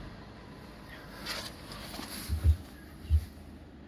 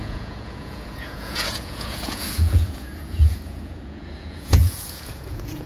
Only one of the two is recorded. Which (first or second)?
first